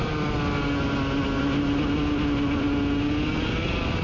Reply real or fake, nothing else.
real